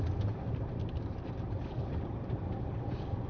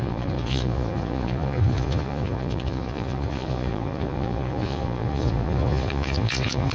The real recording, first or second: first